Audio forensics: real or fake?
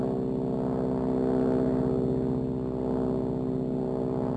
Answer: real